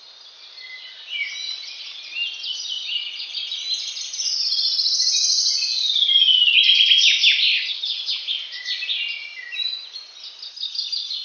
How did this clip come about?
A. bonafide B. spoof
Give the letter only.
A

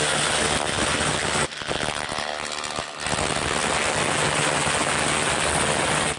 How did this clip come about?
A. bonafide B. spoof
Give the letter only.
A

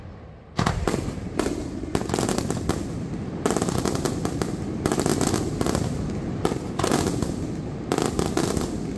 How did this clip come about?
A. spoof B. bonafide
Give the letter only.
B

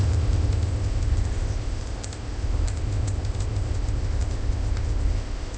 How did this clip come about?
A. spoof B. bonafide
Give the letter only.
A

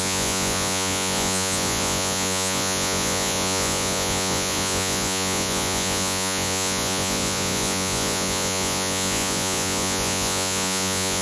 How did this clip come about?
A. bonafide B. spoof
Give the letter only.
B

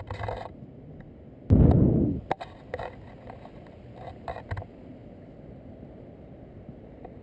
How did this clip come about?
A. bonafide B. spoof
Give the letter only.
A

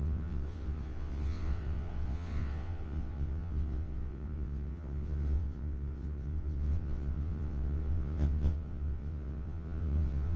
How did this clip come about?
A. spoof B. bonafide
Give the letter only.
A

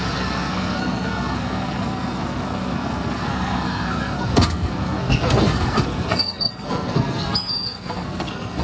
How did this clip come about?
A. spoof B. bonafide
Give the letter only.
A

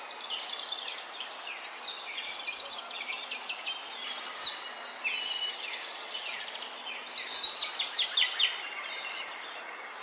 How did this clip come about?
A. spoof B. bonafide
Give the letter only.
B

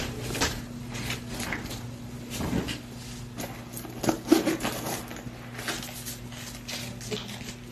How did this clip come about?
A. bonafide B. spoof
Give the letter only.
A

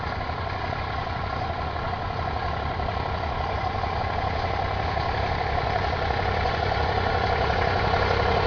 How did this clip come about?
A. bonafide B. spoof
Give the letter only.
B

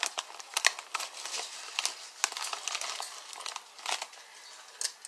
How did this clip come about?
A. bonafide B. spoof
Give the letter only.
A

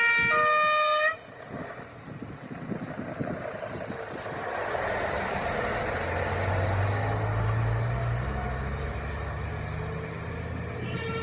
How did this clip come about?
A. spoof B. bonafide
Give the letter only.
B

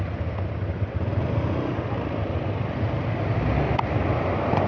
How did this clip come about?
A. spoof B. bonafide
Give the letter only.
B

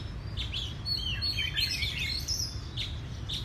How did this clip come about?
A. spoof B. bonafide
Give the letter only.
B